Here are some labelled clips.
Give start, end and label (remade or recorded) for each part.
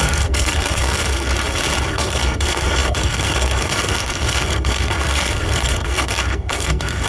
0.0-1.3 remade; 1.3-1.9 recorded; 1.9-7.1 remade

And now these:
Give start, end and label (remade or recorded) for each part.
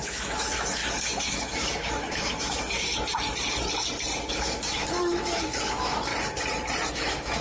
0.0-2.9 remade; 2.9-4.3 recorded; 4.3-6.1 remade; 6.1-6.9 recorded; 6.9-7.4 remade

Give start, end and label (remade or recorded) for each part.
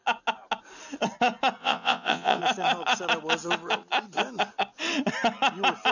0.0-1.6 recorded; 1.6-2.4 remade; 2.4-5.9 recorded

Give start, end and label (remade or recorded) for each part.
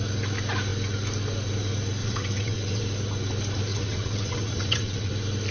0.0-2.0 recorded; 2.0-2.8 remade; 2.8-3.7 recorded; 3.7-5.1 remade; 5.1-5.5 recorded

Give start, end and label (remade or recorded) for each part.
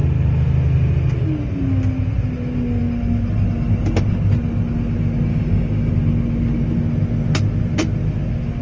0.0-5.3 recorded; 5.3-5.9 remade; 5.9-8.6 recorded